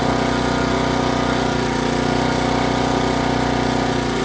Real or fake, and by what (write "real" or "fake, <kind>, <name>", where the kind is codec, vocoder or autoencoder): real